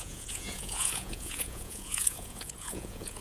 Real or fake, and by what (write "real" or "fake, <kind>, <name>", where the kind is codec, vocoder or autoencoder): fake, vocoder, Vocos